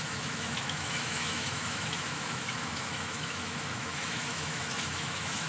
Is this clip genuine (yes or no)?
no